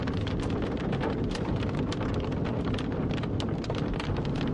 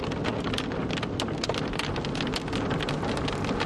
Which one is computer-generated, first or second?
first